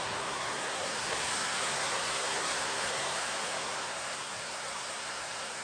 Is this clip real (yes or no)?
no